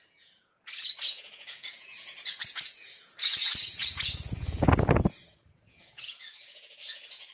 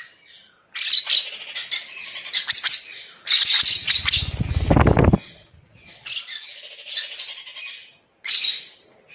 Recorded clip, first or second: second